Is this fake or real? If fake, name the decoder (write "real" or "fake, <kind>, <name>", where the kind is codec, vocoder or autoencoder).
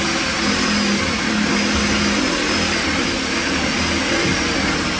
real